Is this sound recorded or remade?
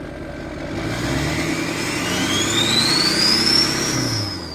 recorded